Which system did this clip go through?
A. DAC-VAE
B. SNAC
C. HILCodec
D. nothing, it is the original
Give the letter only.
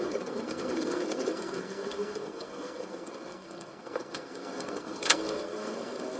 B